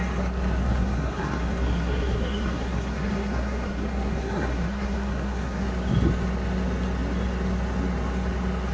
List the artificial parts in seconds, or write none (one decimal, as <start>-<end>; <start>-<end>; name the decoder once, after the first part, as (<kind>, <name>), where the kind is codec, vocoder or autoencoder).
0.6-5.7 (codec, SNAC)